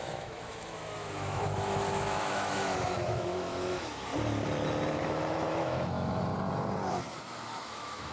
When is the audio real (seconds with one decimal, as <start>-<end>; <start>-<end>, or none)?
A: 4.1-4.9; 6.3-6.9